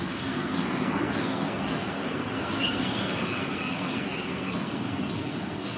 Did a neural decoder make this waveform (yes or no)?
yes